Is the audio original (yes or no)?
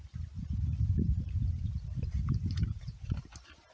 no